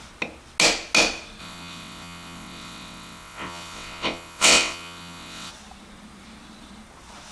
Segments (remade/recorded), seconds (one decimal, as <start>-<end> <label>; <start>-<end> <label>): 0.0-1.4 recorded; 1.4-5.5 remade; 5.5-7.3 recorded